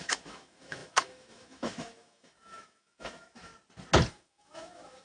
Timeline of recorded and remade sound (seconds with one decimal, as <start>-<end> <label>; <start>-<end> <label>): 0.0-3.5 remade; 3.5-4.1 recorded; 4.1-5.0 remade